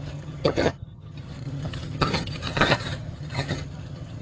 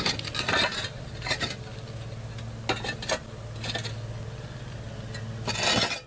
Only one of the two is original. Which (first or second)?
second